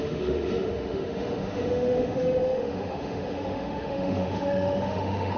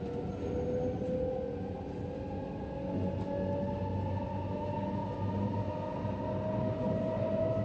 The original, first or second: second